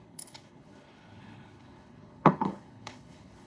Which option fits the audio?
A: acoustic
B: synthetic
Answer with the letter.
B